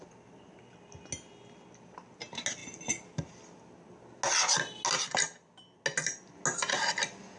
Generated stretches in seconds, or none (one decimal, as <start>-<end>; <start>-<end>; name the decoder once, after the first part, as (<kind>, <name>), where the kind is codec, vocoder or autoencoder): none